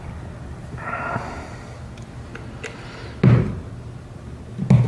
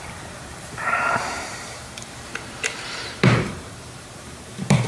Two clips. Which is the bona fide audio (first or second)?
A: first